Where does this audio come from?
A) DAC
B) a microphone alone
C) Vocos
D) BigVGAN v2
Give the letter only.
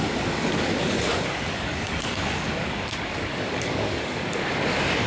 A